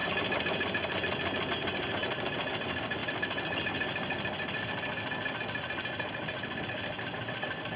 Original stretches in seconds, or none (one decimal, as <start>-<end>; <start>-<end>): 0.0-7.8